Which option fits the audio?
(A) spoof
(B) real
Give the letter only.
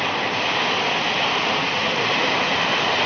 B